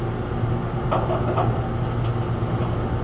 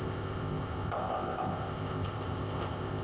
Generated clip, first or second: second